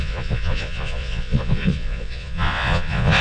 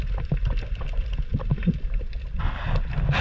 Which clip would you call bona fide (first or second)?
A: second